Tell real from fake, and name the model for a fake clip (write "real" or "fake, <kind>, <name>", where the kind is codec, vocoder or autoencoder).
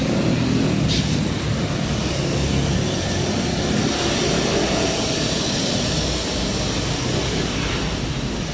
real